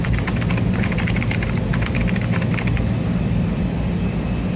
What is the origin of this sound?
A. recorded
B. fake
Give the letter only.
A